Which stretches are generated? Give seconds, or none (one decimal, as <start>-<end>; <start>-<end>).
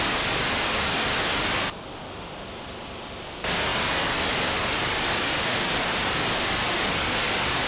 none